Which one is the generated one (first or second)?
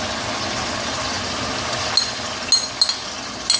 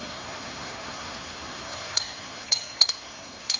second